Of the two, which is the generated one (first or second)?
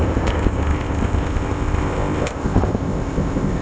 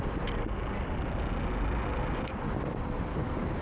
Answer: first